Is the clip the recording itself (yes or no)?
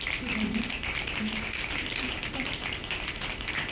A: yes